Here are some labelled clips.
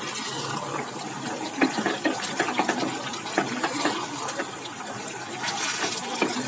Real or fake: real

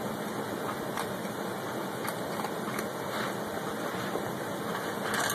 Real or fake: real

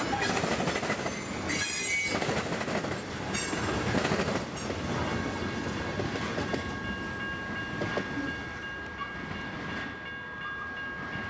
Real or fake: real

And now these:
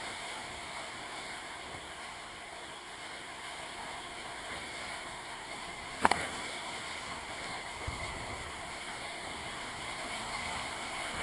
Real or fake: fake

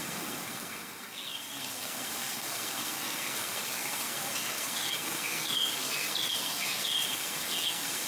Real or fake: fake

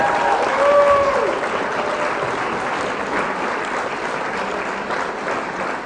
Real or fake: real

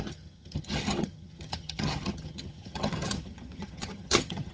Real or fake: fake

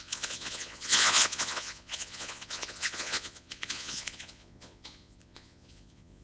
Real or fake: fake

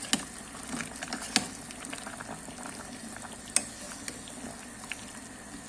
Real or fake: real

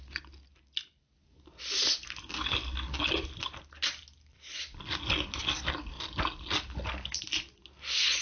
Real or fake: real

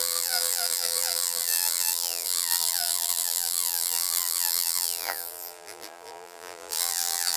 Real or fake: fake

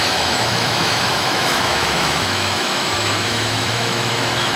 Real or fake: fake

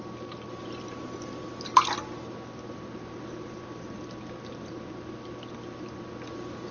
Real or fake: real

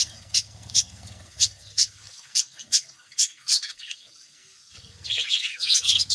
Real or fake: fake